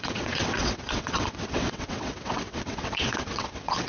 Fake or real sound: fake